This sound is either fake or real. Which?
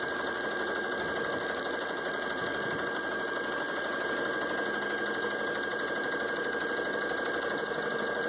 real